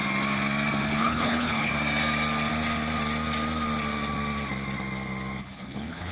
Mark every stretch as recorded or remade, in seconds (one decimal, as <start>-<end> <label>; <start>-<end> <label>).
0.0-1.0 recorded; 1.0-1.7 remade; 1.7-5.4 recorded; 5.4-6.1 remade